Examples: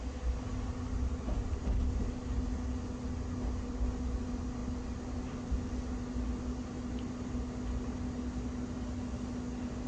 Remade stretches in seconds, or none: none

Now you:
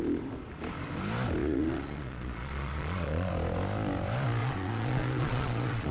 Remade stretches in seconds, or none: 1.4-3.3; 4.4-5.9

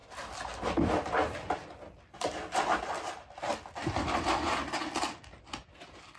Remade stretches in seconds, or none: none

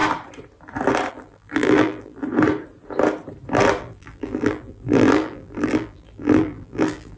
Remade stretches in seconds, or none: 1.1-2.2; 3.8-7.2